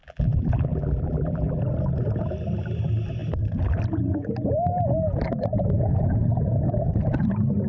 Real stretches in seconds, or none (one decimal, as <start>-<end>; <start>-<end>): 1.6-7.7